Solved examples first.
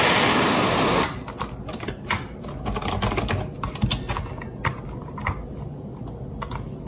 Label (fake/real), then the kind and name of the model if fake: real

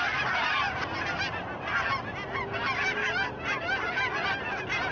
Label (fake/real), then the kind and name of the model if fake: real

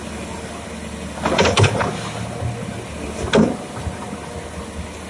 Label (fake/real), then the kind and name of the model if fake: real